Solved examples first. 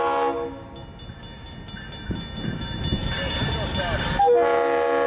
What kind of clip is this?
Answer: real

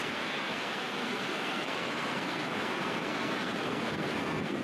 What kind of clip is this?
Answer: fake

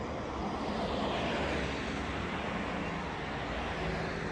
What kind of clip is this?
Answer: real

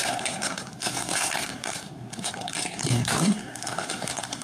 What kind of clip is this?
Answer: fake